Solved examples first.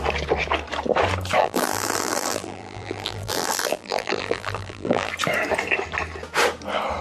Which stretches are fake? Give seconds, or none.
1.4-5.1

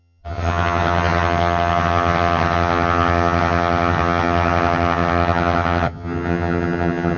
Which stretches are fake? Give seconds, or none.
0.0-7.2

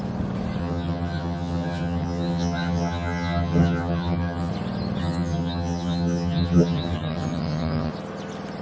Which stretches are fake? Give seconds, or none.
0.6-4.5; 5.0-7.9

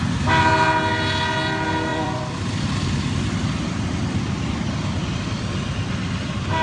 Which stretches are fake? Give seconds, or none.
1.9-3.3

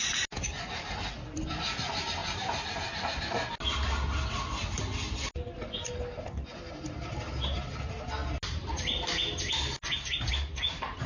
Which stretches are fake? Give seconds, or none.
none

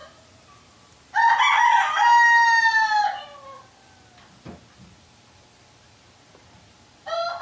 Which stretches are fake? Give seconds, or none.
none

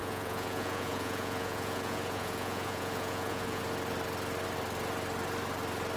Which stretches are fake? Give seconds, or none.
0.0-3.6